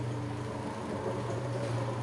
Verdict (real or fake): fake